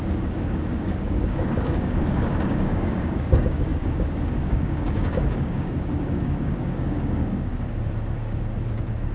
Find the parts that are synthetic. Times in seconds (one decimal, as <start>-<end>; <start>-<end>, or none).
0.0-7.5; 8.7-9.1